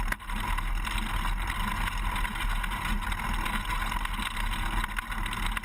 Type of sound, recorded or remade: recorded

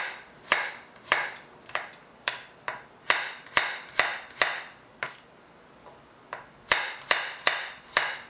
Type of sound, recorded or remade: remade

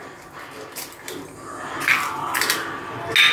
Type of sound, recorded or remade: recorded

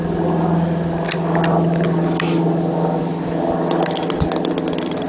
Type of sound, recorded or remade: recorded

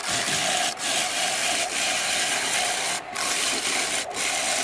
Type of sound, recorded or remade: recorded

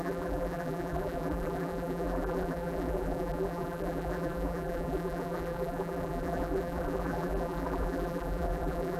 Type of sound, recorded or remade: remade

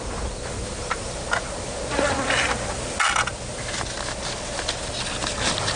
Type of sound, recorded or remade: recorded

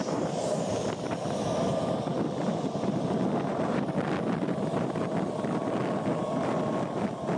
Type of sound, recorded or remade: remade